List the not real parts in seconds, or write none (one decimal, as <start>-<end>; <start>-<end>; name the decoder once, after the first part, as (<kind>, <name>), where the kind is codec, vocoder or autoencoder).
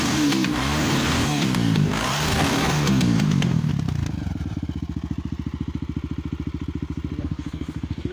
0.0-3.7 (codec, DAC); 7.2-8.1